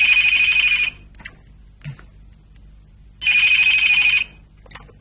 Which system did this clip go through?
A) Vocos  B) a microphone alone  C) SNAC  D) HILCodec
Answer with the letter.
B